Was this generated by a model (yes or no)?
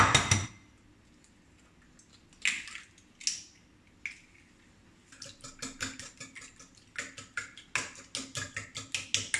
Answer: no